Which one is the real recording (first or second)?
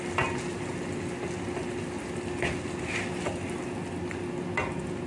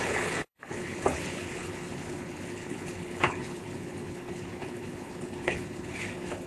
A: first